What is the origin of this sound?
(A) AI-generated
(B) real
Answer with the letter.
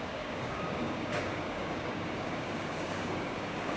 A